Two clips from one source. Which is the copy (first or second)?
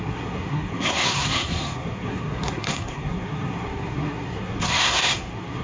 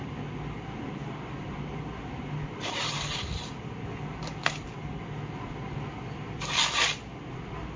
first